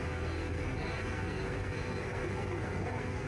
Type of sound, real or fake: fake